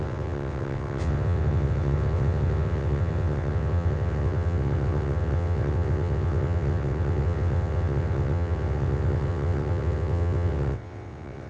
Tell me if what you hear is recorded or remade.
remade